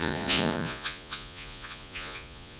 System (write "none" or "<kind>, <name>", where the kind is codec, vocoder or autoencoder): vocoder, Vocos